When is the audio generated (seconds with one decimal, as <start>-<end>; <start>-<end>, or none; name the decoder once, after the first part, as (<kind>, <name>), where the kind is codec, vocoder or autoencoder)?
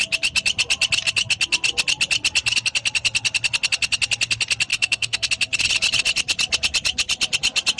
4.7-5.3 (codec, SNAC)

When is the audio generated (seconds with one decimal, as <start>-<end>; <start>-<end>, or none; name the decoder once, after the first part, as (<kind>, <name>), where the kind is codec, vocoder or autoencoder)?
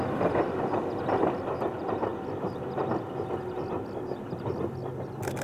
none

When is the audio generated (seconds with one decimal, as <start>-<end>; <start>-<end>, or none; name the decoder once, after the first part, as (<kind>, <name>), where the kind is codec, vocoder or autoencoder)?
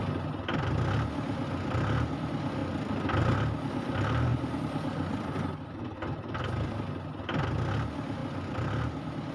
none